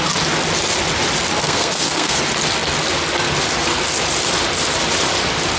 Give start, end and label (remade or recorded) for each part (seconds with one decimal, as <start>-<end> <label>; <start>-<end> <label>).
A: 0.0-1.4 recorded; 1.4-2.2 remade; 2.2-5.6 recorded